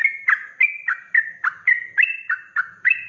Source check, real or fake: real